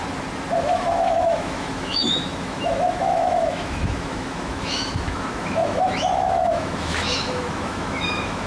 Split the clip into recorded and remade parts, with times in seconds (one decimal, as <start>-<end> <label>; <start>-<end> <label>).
0.0-0.6 recorded; 0.6-8.5 remade

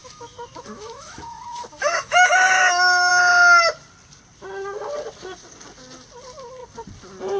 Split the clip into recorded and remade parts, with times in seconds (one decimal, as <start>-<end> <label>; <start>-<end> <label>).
0.0-3.1 remade; 3.1-7.4 recorded

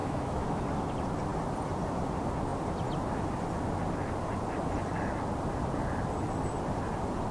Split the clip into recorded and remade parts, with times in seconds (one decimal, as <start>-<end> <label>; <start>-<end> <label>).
0.0-0.6 remade; 0.6-7.3 recorded

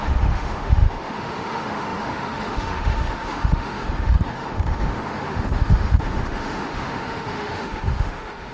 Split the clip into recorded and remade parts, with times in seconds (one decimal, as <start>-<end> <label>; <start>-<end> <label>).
0.0-8.5 remade

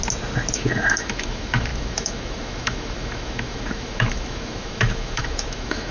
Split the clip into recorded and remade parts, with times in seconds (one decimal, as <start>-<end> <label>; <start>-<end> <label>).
0.0-0.5 recorded; 0.5-5.9 remade

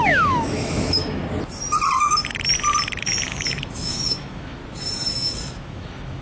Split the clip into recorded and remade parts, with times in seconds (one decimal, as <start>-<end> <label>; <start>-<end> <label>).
0.0-1.2 remade; 1.2-3.0 recorded; 3.0-4.6 remade; 4.6-5.1 recorded; 5.1-6.2 remade

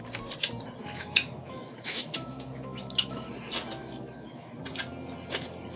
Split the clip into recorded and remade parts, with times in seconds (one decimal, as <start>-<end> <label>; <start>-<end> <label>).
0.0-0.8 recorded; 0.8-3.3 remade; 3.3-3.8 recorded; 3.8-4.5 remade; 4.5-5.8 recorded

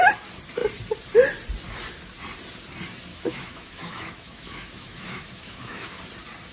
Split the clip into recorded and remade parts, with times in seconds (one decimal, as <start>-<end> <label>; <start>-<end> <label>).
0.0-3.1 recorded; 3.1-6.0 remade; 6.0-6.5 recorded